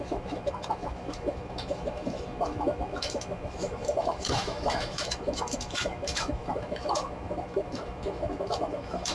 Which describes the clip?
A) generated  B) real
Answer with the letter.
A